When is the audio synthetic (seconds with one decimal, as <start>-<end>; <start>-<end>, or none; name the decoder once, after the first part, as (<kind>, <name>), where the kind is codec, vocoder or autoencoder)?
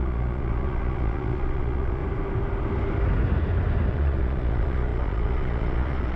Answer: 0.0-2.0 (vocoder, Vocos); 3.9-6.2